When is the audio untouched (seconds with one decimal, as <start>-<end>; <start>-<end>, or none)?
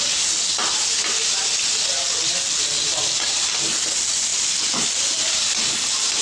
0.0-6.2